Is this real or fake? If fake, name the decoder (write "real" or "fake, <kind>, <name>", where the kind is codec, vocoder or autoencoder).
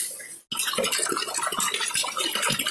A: real